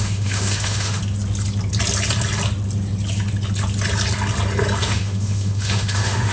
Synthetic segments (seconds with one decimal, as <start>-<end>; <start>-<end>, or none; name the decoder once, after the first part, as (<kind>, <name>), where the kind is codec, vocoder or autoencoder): 0.0-1.0 (autoencoder, DAC-VAE); 4.8-6.3